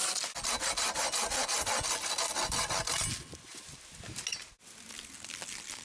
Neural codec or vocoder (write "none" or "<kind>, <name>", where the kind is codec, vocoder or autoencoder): none